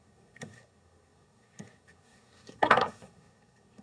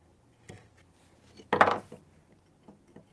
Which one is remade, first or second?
first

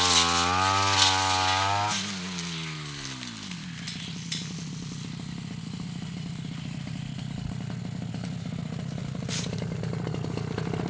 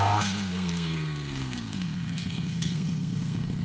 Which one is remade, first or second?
second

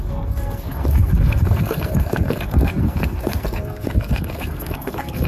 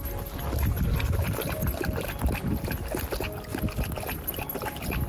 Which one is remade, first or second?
first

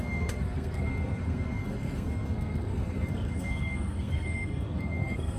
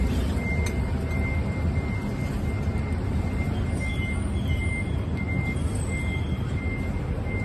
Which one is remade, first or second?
first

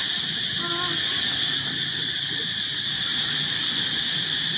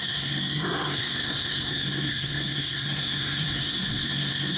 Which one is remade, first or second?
second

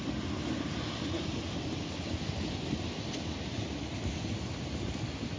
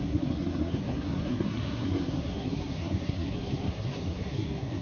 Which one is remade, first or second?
second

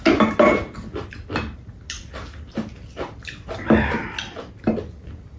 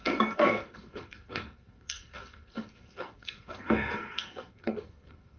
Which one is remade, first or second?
second